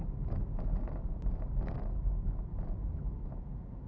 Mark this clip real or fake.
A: real